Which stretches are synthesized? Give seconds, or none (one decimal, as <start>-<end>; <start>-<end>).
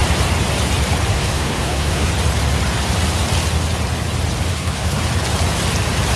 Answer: 1.1-2.1; 4.5-5.0